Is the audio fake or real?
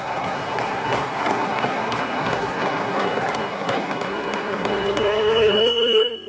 fake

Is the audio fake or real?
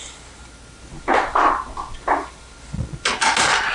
real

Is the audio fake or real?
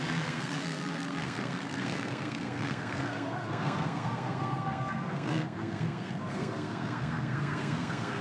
fake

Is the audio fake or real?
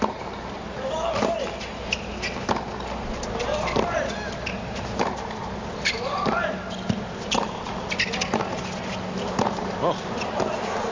real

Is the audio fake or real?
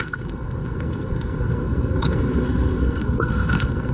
fake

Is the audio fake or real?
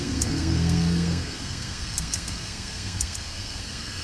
fake